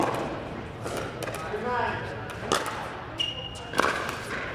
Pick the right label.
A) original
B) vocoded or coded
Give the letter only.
A